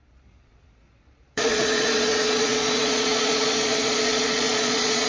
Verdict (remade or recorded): remade